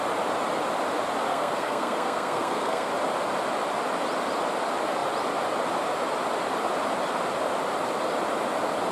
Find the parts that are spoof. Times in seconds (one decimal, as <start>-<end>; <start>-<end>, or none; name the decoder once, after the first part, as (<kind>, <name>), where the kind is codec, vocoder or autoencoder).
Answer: 1.3-2.9 (codec, SNAC)